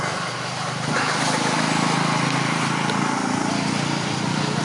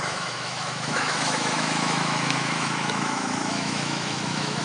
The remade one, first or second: second